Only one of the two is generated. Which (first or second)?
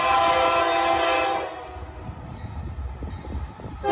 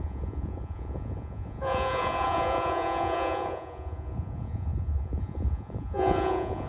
second